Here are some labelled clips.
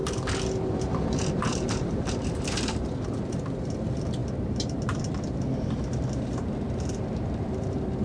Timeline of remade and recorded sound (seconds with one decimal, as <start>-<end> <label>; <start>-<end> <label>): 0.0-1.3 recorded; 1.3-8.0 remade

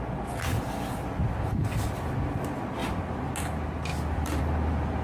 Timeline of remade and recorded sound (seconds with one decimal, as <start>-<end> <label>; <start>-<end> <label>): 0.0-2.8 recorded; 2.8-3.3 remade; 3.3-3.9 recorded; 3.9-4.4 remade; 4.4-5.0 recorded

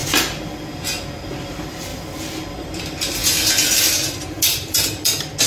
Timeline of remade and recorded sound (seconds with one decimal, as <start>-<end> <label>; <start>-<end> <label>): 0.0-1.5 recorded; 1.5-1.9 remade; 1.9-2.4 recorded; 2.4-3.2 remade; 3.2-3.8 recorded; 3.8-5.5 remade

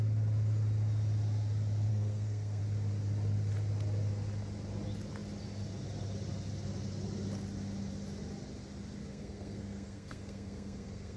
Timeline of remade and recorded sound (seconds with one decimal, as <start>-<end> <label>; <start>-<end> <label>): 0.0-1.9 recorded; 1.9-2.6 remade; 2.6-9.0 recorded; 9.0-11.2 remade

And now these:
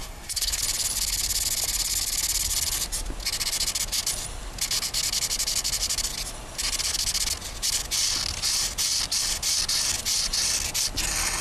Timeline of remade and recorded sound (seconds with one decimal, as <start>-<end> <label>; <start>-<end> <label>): 0.0-0.6 remade; 0.6-11.4 recorded

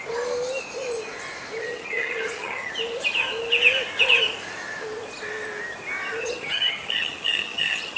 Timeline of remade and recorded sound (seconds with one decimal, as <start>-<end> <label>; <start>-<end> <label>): 0.0-1.6 recorded; 1.6-2.7 remade; 2.7-6.2 recorded; 6.2-8.0 remade